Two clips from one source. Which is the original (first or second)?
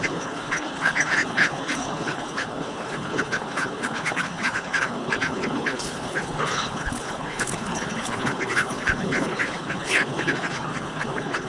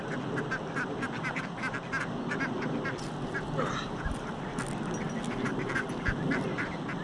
second